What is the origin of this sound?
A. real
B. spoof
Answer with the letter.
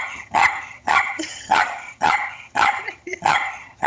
B